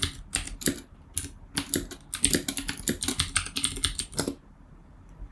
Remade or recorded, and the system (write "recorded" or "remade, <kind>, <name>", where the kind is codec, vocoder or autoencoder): recorded